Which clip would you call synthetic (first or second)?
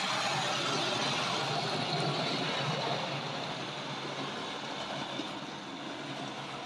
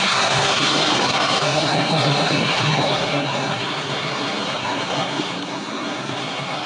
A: second